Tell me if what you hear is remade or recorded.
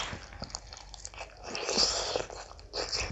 recorded